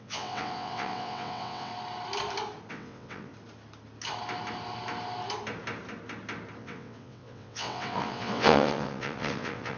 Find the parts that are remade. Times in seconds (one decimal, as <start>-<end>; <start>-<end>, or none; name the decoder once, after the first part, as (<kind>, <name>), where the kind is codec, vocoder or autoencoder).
0.0-1.7 (vocoder, WaveNeXt); 2.7-3.3; 6.6-9.8